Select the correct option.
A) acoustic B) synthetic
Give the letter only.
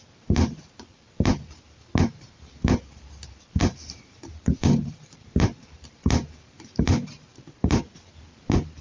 B